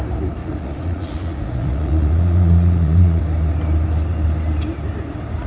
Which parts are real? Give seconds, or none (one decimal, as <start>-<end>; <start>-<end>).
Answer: 0.0-0.4; 3.2-5.5